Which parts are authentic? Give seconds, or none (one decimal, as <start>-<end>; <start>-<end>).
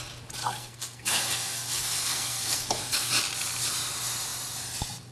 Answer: 0.0-0.4; 3.1-5.1